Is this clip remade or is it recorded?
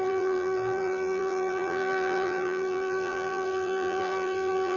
remade